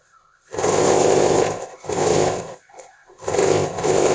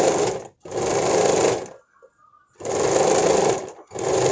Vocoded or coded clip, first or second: first